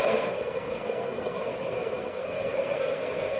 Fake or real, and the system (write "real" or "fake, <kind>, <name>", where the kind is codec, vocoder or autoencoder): fake, codec, SNAC